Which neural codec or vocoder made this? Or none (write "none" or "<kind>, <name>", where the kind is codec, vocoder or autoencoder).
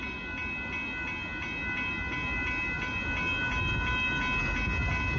none